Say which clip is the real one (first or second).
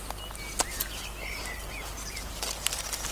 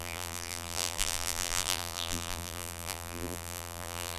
first